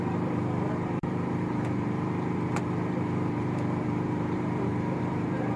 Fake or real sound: fake